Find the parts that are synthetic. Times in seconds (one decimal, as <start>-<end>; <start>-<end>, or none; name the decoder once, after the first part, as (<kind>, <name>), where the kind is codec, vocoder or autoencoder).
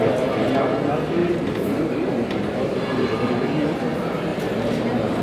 1.2-3.3 (vocoder, BigVGAN v2); 4.3-5.2